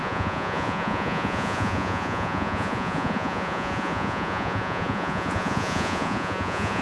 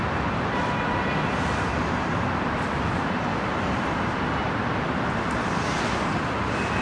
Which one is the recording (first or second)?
second